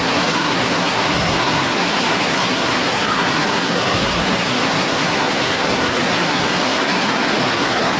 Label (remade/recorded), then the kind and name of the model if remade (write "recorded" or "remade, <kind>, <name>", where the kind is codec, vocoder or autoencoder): remade, codec, SNAC